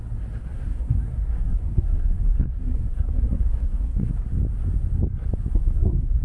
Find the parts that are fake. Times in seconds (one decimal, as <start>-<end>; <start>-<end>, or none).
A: 0.4-4.1; 5.5-6.2